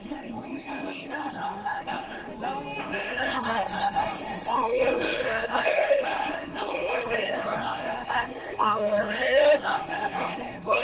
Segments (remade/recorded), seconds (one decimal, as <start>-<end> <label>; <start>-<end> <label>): 0.0-2.3 remade; 2.3-2.8 recorded; 2.8-10.8 remade